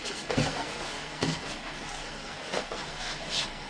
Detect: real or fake fake